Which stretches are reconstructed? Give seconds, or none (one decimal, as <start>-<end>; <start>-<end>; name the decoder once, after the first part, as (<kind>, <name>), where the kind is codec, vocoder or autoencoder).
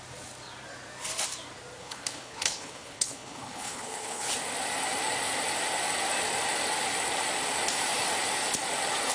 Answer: 1.8-4.3 (codec, HILCodec)